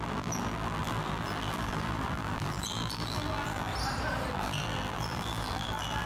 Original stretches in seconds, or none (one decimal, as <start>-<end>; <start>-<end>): 3.7-4.3

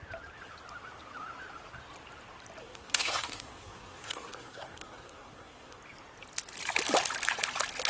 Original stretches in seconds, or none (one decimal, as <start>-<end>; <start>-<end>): 0.0-2.6; 5.8-7.9

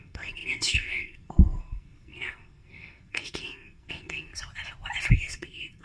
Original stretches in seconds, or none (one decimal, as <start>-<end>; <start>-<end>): 4.3-5.1

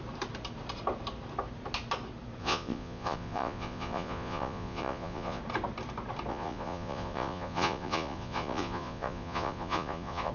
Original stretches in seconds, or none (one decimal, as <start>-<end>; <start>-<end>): 0.0-2.4; 5.4-6.3

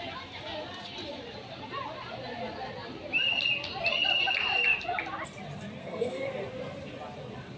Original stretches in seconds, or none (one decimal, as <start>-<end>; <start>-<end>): 0.0-5.8; 6.4-7.6

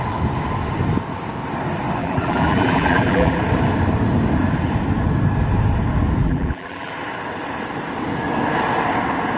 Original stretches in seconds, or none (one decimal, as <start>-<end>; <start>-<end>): 0.0-2.0; 3.4-6.2; 6.9-9.4

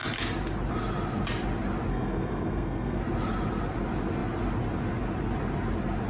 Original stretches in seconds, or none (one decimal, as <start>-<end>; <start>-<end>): 0.0-1.9; 3.0-6.1